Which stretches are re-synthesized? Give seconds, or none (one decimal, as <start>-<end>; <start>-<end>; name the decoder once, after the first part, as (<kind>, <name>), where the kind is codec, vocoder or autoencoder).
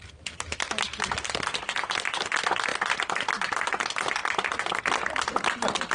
2.7-3.8 (vocoder, BigVGAN v2); 4.2-4.8